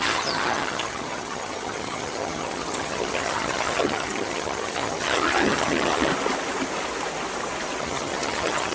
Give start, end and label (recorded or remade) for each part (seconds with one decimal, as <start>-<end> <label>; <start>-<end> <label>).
0.0-6.1 remade; 6.1-7.8 recorded; 7.8-8.7 remade